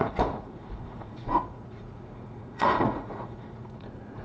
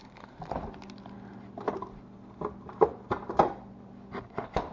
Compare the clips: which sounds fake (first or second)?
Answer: first